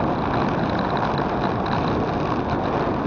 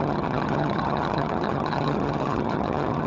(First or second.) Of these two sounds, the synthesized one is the second